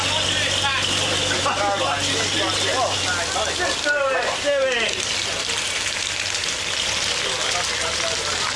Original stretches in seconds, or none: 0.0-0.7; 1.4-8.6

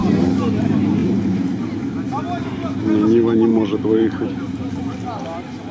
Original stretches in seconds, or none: 0.0-1.0; 2.8-3.5; 4.8-5.7

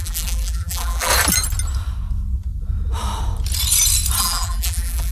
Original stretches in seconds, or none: 1.1-4.2

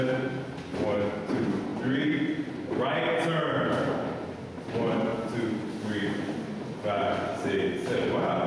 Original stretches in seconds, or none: 0.0-8.5